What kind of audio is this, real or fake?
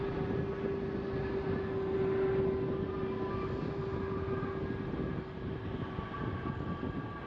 real